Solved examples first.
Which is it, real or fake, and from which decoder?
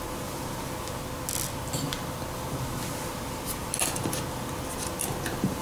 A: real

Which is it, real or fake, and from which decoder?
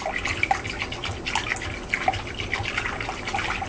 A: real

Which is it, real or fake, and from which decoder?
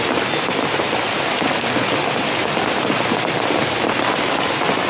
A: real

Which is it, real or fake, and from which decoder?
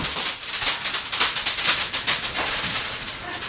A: real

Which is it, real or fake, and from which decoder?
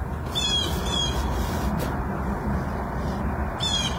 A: real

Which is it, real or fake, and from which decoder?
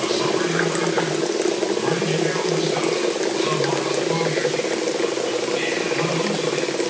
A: real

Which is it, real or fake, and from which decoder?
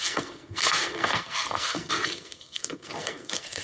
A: fake, codec, SNAC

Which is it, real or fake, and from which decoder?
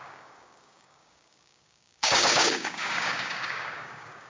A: fake, codec, DAC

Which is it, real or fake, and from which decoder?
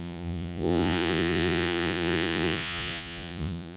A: fake, vocoder, Vocos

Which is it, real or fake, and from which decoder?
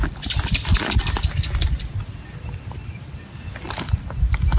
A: real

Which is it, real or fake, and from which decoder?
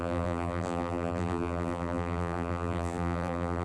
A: fake, vocoder, BigVGAN v2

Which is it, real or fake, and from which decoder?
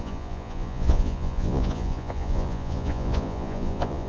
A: fake, vocoder, Vocos